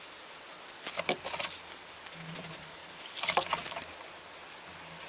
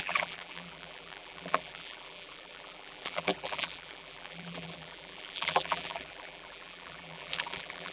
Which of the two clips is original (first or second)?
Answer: first